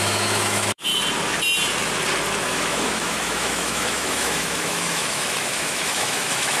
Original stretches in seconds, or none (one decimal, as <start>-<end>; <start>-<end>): 0.9-2.4